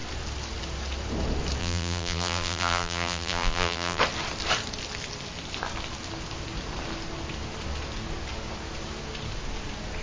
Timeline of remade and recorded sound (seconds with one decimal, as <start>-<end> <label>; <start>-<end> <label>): 0.0-1.6 recorded; 1.6-4.0 remade; 4.0-10.0 recorded